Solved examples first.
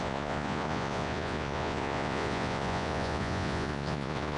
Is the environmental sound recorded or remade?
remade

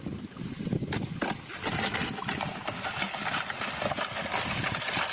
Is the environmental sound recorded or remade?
recorded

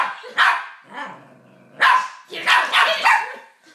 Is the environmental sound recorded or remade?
recorded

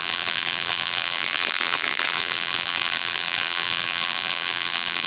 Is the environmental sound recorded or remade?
remade